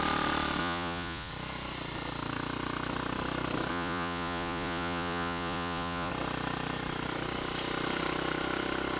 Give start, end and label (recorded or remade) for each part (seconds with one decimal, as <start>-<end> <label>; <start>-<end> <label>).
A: 0.0-0.6 recorded; 0.6-1.3 remade; 1.3-3.7 recorded; 3.7-6.1 remade; 6.1-9.0 recorded